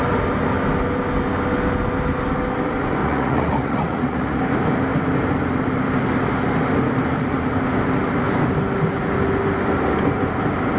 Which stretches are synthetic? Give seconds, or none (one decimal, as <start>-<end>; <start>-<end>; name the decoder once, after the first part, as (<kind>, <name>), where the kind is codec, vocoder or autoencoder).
3.0-4.4 (vocoder, Vocos)